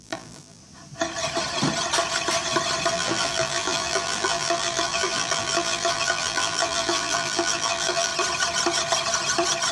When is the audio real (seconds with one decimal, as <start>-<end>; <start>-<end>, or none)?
0.6-2.9; 8.1-9.7